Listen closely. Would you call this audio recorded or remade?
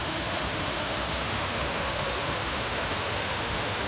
remade